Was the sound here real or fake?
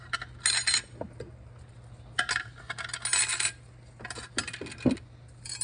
real